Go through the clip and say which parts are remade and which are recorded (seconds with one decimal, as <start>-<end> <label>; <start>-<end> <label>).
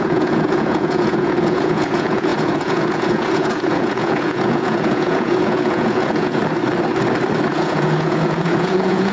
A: 0.0-6.4 remade; 6.4-7.5 recorded; 7.5-9.1 remade